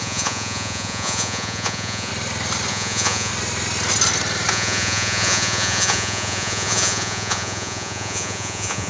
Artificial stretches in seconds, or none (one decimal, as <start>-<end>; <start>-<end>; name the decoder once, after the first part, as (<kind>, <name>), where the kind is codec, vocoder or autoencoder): 0.0-2.1 (vocoder, Vocos); 2.7-3.3; 4.5-8.9